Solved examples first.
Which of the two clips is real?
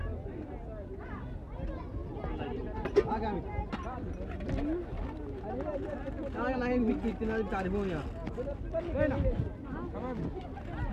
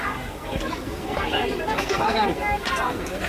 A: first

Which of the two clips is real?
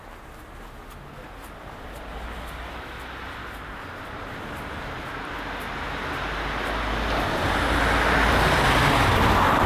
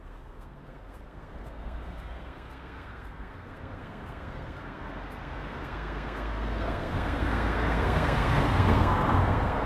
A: first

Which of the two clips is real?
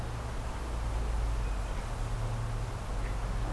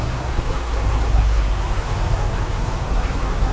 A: first